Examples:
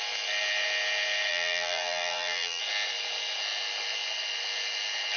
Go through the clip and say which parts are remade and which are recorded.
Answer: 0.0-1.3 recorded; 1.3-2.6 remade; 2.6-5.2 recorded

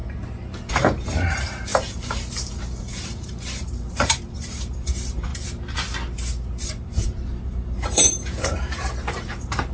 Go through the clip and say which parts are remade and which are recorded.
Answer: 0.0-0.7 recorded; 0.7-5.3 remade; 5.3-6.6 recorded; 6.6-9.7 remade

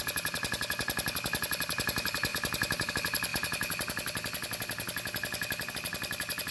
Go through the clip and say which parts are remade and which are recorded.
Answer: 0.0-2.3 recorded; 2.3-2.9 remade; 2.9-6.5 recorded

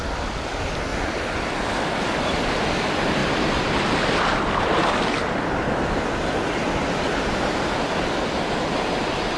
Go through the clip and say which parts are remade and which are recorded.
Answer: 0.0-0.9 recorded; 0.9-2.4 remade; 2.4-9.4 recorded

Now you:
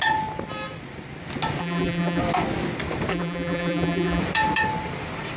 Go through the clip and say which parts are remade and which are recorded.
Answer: 0.0-1.6 recorded; 1.6-2.2 remade; 2.2-3.1 recorded; 3.1-4.2 remade; 4.2-5.4 recorded